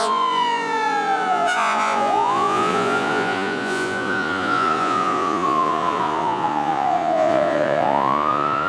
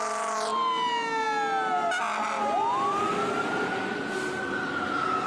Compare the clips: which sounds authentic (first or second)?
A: second